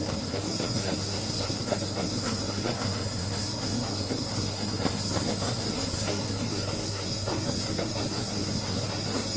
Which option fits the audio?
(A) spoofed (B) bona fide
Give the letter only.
A